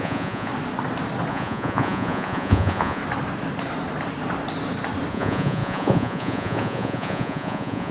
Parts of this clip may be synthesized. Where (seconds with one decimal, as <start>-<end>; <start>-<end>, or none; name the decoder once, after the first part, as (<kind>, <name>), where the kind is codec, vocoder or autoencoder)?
0.0-0.5 (vocoder, Vocos); 1.3-3.0; 5.1-7.9